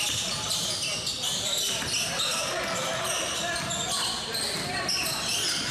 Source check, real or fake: real